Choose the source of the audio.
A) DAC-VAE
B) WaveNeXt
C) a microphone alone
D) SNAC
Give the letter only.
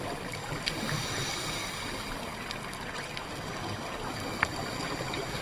C